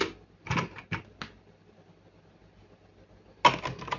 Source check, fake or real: real